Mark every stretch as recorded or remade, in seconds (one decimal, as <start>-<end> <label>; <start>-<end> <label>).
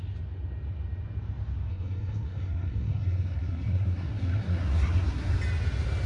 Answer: 0.0-1.7 recorded; 1.7-5.4 remade; 5.4-6.1 recorded